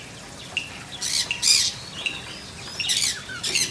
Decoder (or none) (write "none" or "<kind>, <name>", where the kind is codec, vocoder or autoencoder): none